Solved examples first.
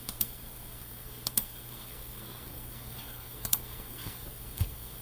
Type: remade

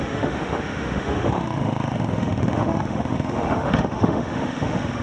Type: remade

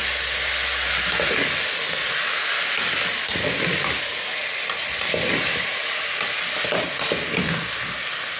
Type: recorded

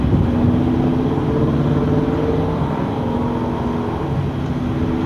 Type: recorded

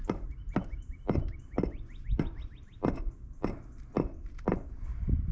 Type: recorded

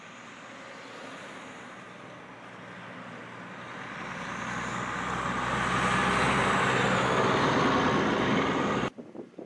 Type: recorded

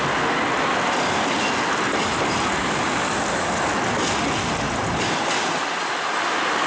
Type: recorded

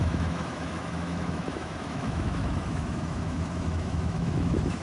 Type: remade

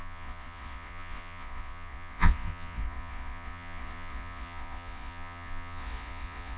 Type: remade